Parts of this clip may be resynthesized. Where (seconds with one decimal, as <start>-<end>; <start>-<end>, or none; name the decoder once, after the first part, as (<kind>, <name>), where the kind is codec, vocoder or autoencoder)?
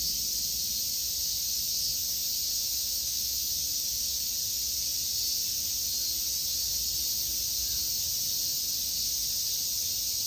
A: 2.5-3.5 (autoencoder, DAC-VAE)